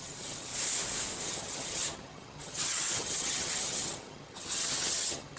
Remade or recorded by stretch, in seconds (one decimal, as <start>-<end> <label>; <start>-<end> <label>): 0.0-0.5 remade; 0.5-1.2 recorded; 1.2-5.4 remade